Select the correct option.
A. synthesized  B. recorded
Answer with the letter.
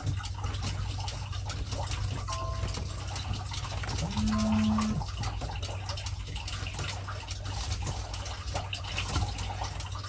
B